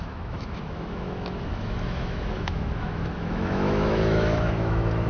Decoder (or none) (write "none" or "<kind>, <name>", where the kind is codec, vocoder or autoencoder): autoencoder, DAC-VAE